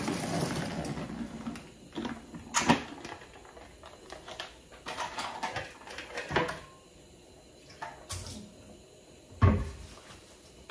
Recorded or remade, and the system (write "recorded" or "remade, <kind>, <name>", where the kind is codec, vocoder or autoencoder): recorded